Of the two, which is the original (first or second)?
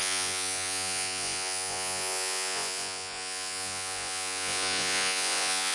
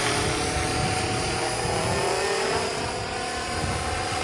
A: second